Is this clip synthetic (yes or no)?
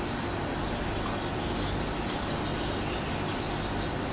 no